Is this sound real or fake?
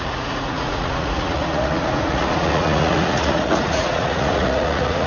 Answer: fake